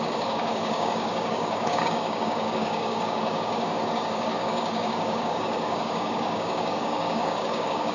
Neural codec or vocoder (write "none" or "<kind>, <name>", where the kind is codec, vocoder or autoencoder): codec, DAC